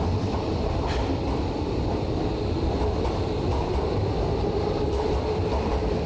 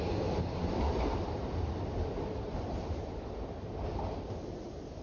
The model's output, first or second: second